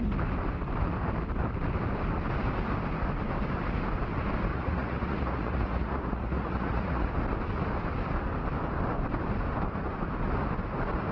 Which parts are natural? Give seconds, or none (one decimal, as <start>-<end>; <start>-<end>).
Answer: 0.0-4.5; 7.1-11.1